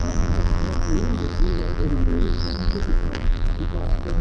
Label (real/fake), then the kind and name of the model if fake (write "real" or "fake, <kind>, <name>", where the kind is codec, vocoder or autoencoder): fake, vocoder, BigVGAN v2